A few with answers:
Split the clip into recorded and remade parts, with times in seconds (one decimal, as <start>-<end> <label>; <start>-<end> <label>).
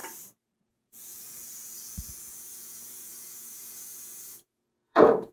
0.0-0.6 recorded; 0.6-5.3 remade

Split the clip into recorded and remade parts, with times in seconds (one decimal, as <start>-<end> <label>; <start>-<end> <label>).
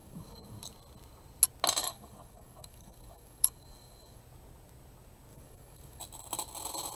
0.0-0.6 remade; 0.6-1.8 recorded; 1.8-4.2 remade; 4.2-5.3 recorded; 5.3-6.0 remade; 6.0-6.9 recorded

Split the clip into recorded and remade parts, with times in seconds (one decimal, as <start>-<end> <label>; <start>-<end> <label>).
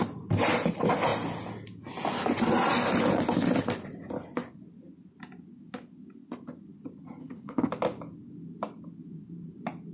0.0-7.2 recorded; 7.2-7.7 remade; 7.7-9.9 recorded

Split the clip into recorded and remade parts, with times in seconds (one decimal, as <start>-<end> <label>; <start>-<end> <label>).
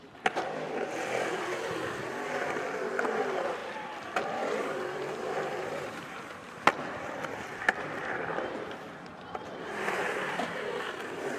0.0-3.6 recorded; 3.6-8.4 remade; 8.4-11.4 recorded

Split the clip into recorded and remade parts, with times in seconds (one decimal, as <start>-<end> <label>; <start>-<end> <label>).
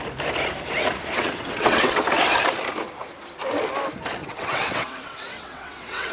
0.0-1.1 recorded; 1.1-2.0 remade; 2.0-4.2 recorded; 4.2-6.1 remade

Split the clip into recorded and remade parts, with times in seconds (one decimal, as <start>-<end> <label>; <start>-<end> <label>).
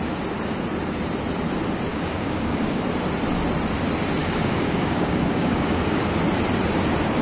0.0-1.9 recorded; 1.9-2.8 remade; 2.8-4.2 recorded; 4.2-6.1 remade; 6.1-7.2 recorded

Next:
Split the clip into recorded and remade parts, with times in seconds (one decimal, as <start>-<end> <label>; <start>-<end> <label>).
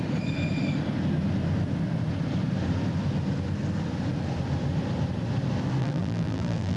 0.0-5.8 recorded; 5.8-6.8 remade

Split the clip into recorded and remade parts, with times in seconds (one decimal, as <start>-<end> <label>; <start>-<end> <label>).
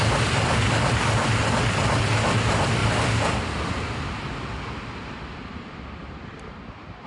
0.0-7.1 recorded